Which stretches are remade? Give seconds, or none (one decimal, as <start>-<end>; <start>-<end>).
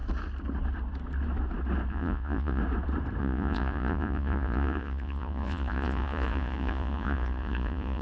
1.9-2.6; 3.2-8.0